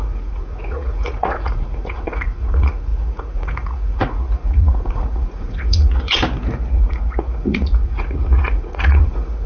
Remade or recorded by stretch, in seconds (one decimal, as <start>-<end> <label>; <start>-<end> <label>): 0.0-6.2 remade; 6.2-6.7 recorded; 6.7-9.5 remade